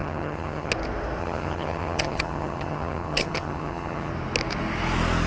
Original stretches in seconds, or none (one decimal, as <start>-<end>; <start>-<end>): 0.7-1.2; 4.1-5.3